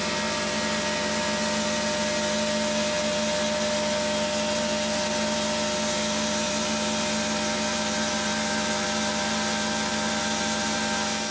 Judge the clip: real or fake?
real